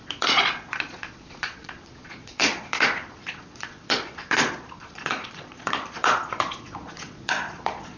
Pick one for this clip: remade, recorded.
remade